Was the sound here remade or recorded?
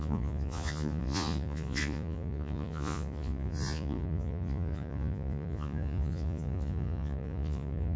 remade